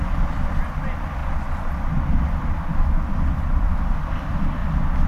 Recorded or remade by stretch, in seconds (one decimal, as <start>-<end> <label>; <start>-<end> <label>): 0.0-1.2 remade; 1.2-3.6 recorded; 3.6-4.6 remade; 4.6-5.1 recorded

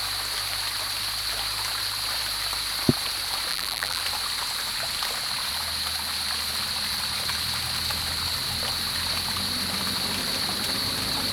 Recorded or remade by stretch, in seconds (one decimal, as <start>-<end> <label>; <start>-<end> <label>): 0.0-3.5 recorded; 3.5-4.0 remade; 4.0-11.3 recorded

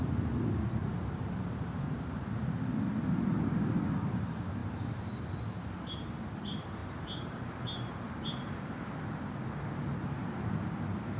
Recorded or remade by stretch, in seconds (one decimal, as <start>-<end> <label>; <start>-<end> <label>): 0.0-0.8 recorded; 0.8-2.2 remade; 2.2-4.6 recorded; 4.6-6.1 remade; 6.1-6.8 recorded; 6.8-8.1 remade; 8.1-11.2 recorded